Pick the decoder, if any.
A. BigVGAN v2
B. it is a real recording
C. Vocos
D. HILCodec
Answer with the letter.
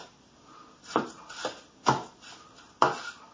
B